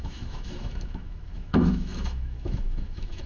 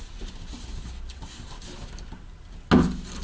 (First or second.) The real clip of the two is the second